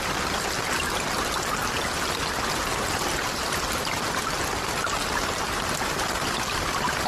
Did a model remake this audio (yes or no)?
no